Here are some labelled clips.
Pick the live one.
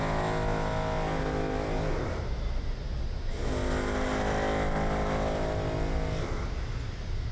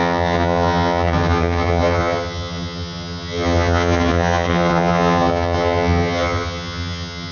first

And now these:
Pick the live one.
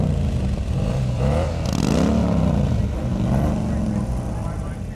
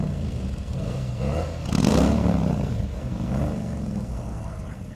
first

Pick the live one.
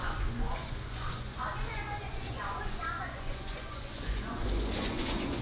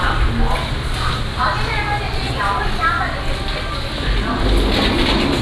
second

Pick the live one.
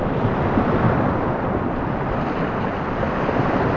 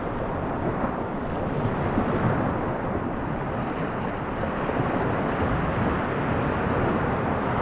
second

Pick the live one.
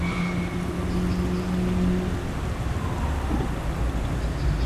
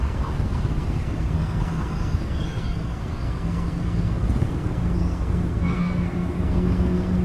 first